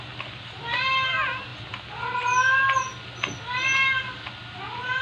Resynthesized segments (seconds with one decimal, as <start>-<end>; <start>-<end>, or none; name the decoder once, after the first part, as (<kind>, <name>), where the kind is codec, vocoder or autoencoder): none

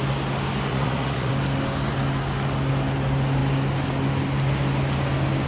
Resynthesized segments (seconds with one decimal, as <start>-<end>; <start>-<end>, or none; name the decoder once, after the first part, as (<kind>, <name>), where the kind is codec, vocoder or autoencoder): 0.7-1.3 (vocoder, Vocos)